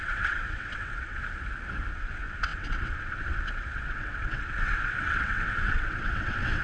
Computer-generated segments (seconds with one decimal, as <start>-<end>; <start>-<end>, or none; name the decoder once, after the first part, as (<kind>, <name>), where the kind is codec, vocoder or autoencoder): 0.0-1.2 (vocoder, WaveNeXt); 1.9-6.6